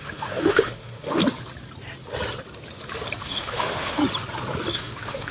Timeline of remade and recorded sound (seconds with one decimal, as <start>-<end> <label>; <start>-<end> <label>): 0.0-1.2 remade; 1.2-3.2 recorded; 3.2-4.0 remade; 4.0-4.7 recorded; 4.7-5.3 remade

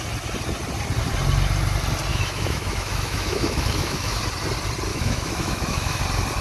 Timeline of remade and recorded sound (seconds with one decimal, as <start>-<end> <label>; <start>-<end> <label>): 0.0-2.1 recorded; 2.1-4.2 remade; 4.2-4.9 recorded; 4.9-6.0 remade; 6.0-6.4 recorded

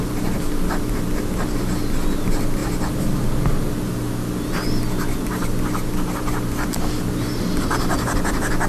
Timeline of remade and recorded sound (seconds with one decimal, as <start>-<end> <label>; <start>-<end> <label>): 0.0-8.7 recorded

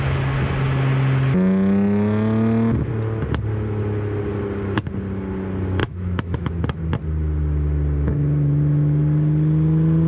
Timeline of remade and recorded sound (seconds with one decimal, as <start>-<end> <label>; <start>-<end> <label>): 0.0-5.8 recorded; 5.8-6.5 remade; 6.5-10.1 recorded

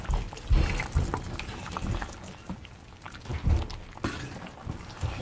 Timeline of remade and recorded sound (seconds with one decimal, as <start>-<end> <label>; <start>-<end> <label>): 0.0-5.2 recorded

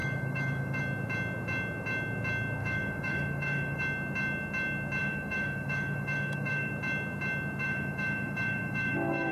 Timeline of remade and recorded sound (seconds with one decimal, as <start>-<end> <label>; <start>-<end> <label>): 0.0-0.8 remade; 0.8-2.6 recorded; 2.6-3.8 remade; 3.8-5.0 recorded; 5.0-6.7 remade; 6.7-7.6 recorded; 7.6-9.3 remade

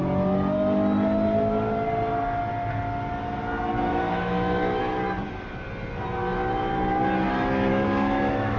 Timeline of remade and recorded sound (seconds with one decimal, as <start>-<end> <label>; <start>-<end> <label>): 0.0-3.9 recorded; 3.9-4.8 remade; 4.8-7.7 recorded; 7.7-8.6 remade